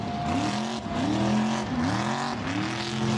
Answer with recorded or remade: recorded